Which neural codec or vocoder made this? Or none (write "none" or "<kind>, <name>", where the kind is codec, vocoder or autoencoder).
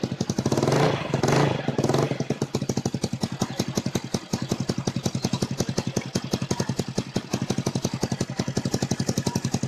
none